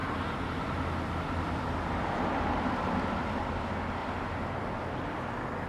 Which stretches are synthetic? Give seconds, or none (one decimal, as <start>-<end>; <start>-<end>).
0.0-3.4; 4.0-4.7